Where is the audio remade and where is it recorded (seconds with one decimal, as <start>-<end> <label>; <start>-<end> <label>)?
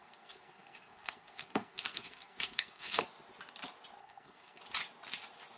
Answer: 0.0-3.0 remade; 3.0-4.0 recorded; 4.0-4.6 remade; 4.6-5.6 recorded